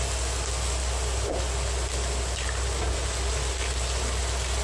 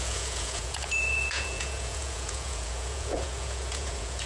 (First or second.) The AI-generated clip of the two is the second